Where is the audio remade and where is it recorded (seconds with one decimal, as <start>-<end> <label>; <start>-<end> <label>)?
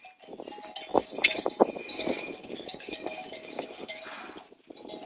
0.0-0.9 recorded; 0.9-4.0 remade; 4.0-5.1 recorded